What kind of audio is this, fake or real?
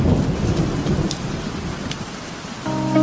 real